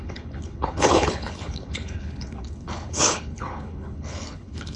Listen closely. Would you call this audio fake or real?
fake